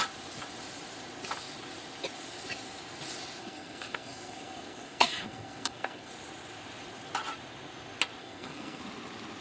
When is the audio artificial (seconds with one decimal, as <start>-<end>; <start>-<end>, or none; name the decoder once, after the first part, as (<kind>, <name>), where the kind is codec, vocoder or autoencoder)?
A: 3.4-6.1 (codec, SNAC); 8.2-8.8